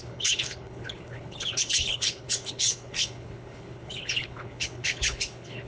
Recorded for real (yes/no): no